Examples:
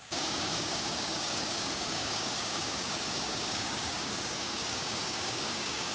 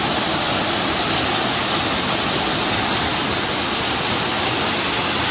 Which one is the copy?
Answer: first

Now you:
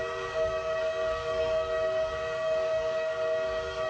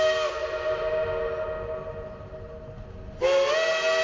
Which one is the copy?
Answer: first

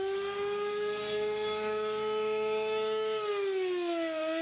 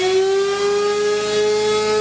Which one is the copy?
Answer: first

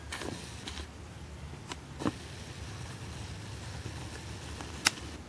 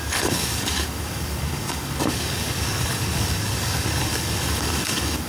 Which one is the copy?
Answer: second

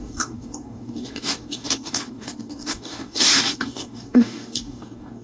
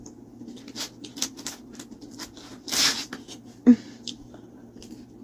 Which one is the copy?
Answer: first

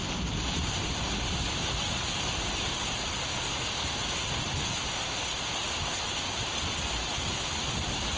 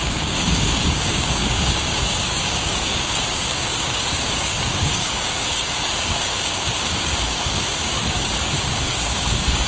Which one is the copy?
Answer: second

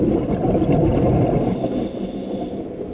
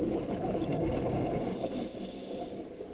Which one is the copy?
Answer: second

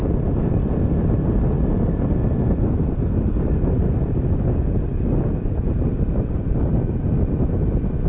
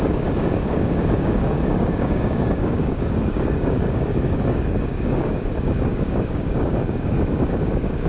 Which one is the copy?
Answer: second